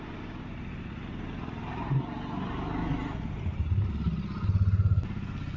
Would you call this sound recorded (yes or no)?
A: yes